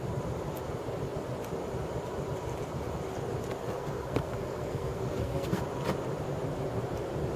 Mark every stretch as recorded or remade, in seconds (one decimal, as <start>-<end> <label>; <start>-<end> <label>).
0.0-3.6 recorded; 3.6-5.6 remade; 5.6-7.4 recorded